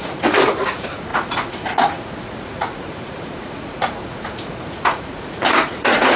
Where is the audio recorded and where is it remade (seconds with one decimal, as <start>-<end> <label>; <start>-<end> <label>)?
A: 0.0-6.2 remade